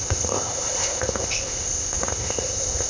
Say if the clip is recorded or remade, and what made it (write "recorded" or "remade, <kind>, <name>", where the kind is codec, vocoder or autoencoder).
remade, codec, ZipCodec